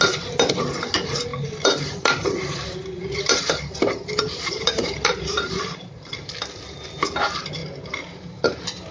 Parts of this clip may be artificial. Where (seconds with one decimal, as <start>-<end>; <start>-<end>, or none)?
1.3-6.3; 7.6-8.9